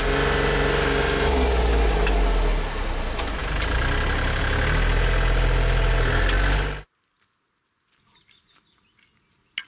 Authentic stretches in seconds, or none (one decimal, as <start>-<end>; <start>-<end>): 0.0-9.7